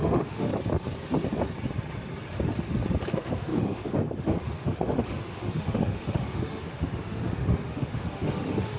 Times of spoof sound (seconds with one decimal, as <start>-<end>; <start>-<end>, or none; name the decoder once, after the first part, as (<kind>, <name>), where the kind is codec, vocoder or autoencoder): 0.0-0.5 (autoencoder, DAC-VAE); 3.1-8.8